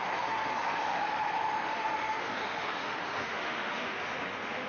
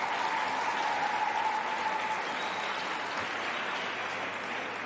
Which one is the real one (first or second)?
second